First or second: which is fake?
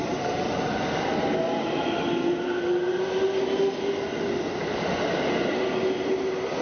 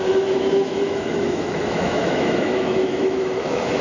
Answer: second